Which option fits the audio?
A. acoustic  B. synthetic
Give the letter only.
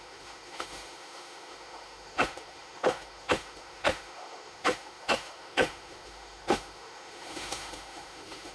B